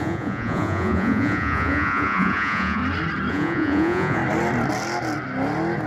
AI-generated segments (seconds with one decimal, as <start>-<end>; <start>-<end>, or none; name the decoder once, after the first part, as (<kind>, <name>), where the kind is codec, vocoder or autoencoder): 0.0-2.8 (vocoder, Vocos); 3.3-4.2